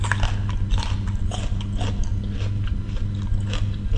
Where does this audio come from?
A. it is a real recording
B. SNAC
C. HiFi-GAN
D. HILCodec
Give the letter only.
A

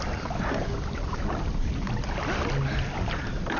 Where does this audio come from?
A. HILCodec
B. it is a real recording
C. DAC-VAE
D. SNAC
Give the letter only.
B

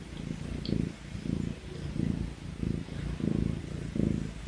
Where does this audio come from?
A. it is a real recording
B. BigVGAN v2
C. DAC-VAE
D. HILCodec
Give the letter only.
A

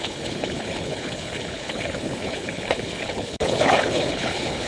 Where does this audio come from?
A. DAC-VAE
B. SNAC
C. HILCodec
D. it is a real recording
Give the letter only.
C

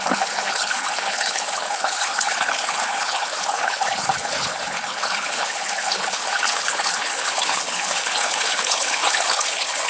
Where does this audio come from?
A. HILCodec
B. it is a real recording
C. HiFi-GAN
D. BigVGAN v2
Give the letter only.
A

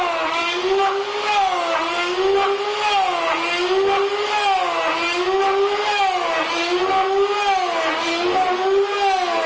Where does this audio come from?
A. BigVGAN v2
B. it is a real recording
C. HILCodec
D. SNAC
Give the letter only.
B